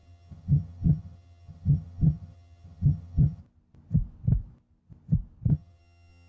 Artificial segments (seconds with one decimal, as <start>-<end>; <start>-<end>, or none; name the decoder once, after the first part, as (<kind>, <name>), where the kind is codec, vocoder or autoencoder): 0.0-3.4 (vocoder, HiFi-GAN); 5.5-6.3